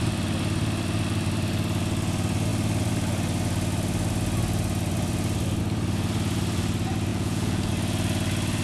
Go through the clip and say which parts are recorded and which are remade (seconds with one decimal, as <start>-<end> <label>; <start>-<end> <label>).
0.0-7.1 recorded; 7.1-7.7 remade; 7.7-8.6 recorded